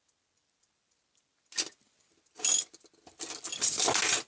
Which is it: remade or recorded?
recorded